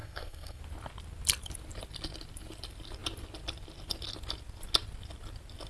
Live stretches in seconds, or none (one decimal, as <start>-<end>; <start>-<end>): 0.6-5.7